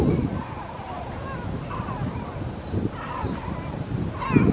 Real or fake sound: real